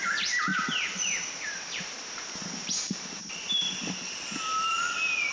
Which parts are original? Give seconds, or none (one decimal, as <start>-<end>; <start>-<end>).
0.0-0.5; 2.7-3.2; 4.7-5.3